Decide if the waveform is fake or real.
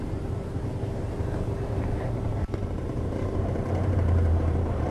fake